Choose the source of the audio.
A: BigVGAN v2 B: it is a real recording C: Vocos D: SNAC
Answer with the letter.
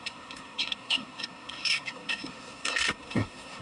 D